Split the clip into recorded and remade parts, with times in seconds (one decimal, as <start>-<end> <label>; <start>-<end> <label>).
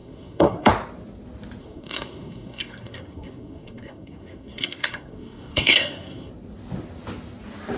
0.0-0.7 remade; 0.7-1.6 recorded; 1.6-6.3 remade; 6.3-7.8 recorded